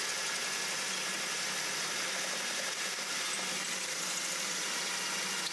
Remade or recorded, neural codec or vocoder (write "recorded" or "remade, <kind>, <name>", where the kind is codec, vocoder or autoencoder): recorded